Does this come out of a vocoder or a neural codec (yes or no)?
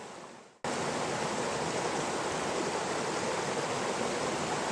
no